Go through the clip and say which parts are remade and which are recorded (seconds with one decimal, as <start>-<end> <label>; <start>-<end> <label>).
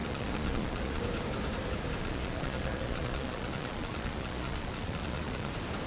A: 0.0-1.0 remade; 1.0-2.0 recorded; 2.0-5.5 remade; 5.5-5.9 recorded